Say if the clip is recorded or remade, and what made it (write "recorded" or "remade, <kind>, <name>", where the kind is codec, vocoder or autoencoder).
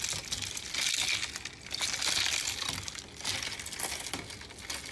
recorded